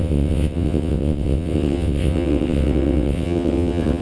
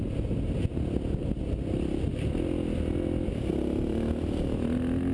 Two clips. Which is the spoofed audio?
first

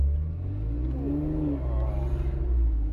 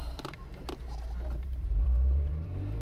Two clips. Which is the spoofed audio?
second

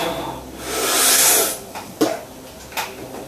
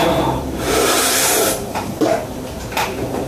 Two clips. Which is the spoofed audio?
second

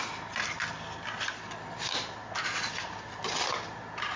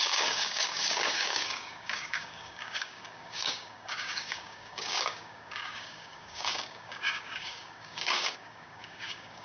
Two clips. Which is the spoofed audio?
second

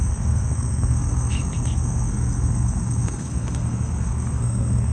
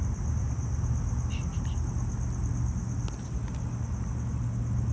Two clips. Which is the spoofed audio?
first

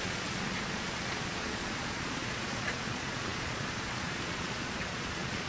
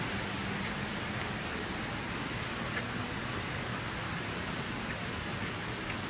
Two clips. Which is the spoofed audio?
first